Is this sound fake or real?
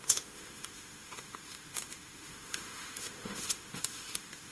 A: fake